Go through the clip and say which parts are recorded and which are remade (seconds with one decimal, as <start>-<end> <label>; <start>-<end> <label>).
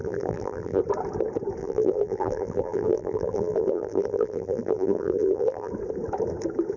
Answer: 0.0-0.8 remade; 0.8-1.6 recorded; 1.6-5.7 remade; 5.7-6.8 recorded